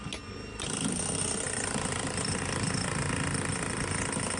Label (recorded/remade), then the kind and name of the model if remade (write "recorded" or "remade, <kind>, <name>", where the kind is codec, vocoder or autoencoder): recorded